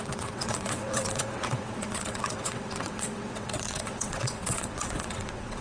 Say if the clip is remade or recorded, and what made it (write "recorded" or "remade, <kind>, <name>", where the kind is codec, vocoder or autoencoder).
remade, vocoder, WaveNeXt